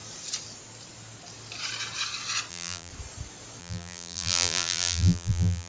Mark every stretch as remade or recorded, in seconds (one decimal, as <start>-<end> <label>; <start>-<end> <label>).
0.0-2.5 recorded; 2.5-2.9 remade; 2.9-3.6 recorded; 3.6-5.7 remade